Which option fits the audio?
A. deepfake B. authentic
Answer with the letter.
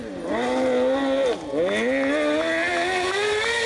B